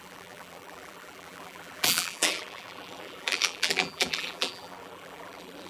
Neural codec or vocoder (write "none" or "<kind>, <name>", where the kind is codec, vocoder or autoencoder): vocoder, BigVGAN v2